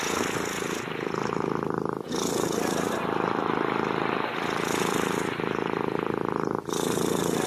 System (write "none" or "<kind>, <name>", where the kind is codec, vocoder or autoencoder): none